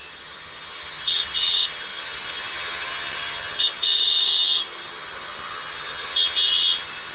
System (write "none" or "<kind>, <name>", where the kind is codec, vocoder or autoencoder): vocoder, HiFi-GAN